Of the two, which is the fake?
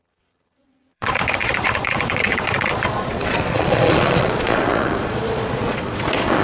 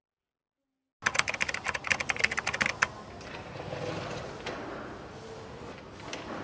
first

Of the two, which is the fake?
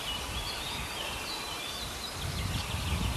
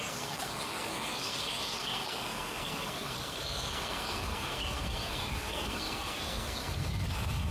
second